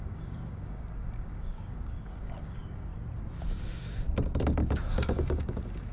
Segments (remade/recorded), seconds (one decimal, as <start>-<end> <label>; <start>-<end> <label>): 0.0-2.9 remade; 2.9-4.9 recorded; 4.9-5.9 remade